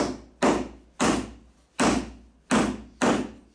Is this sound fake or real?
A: real